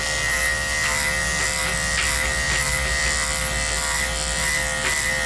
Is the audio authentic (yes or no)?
yes